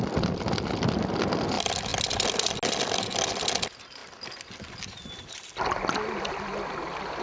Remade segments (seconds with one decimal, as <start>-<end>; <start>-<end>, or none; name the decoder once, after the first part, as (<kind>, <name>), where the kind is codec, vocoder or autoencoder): none